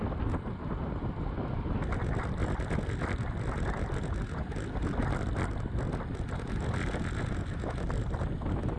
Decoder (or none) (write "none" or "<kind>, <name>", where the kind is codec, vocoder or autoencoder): none